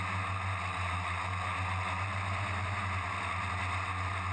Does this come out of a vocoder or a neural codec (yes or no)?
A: no